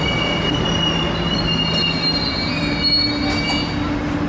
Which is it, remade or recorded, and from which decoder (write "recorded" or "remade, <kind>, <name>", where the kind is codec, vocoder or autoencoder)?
recorded